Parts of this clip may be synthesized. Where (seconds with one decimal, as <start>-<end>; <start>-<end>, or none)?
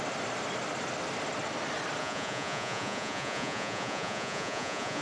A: 2.0-5.0